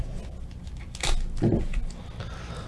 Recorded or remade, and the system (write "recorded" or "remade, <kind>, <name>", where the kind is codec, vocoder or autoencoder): recorded